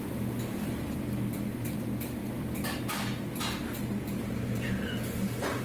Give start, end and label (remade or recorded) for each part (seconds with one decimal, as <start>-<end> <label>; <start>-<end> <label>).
0.0-5.6 recorded